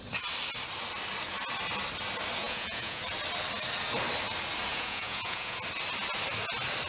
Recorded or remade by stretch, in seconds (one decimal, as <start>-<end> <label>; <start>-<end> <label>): 0.0-2.4 recorded; 2.4-3.0 remade; 3.0-4.7 recorded; 4.7-5.6 remade; 5.6-6.9 recorded